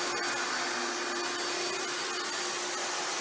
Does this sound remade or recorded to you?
recorded